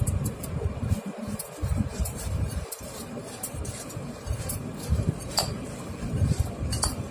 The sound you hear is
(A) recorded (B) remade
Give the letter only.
B